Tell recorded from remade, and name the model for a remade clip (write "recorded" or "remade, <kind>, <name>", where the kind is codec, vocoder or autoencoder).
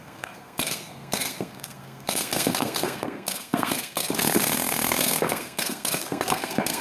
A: remade, codec, SNAC